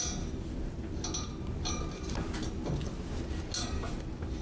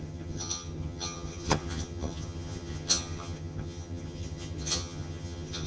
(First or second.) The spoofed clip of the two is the second